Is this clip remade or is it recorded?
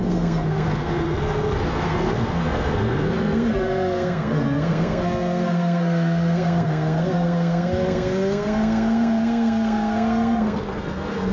remade